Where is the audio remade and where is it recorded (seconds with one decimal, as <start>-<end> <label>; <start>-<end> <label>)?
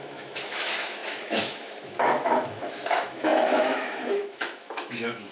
0.0-5.3 remade